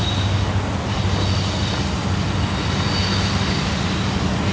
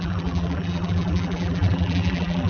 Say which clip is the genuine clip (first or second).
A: first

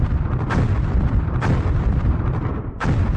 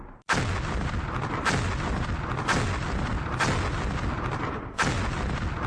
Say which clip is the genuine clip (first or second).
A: second